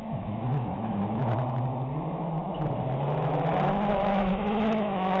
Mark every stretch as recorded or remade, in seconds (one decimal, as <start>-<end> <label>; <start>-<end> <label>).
0.0-1.2 remade; 1.2-3.9 recorded; 3.9-5.2 remade